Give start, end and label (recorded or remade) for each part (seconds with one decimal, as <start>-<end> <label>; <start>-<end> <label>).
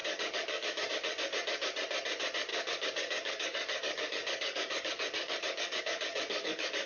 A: 0.0-0.9 remade; 0.9-2.5 recorded; 2.5-6.9 remade